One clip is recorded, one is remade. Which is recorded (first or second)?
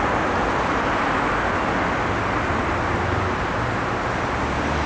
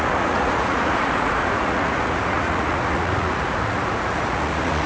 first